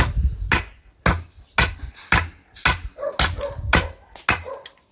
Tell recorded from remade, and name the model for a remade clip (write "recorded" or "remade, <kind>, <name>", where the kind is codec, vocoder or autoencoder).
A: recorded